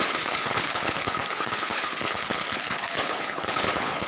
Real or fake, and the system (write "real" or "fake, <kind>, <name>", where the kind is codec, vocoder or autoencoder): fake, codec, HILCodec